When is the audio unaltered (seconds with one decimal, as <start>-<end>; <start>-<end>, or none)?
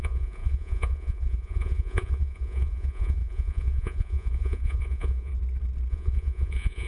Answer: 5.3-5.9